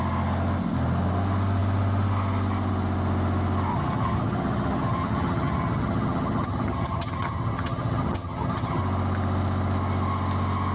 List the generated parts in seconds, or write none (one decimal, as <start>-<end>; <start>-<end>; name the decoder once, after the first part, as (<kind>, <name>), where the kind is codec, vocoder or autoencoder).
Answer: 3.7-8.8 (vocoder, HiFi-GAN)